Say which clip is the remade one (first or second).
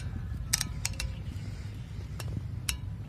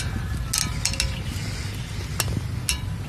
first